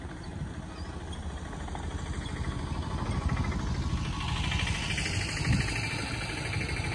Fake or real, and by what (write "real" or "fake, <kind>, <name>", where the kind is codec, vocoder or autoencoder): real